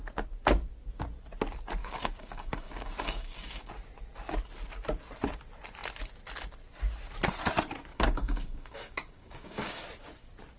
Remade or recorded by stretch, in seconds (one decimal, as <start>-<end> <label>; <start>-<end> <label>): 0.0-1.8 recorded; 1.8-3.7 remade; 3.7-7.9 recorded; 7.9-9.8 remade; 9.8-10.6 recorded